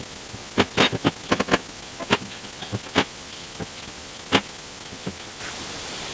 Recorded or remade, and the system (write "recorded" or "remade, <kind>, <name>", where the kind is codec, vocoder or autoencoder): recorded